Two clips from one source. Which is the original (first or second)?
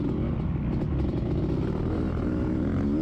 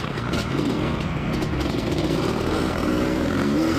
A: first